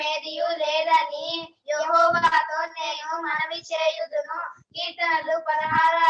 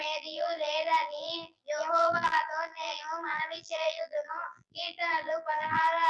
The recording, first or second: first